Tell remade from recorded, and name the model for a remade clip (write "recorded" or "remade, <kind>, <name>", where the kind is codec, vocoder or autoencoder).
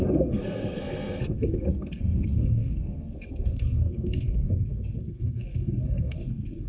remade, codec, SNAC